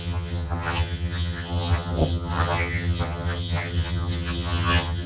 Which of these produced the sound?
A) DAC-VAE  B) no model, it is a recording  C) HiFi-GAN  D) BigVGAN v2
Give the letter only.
C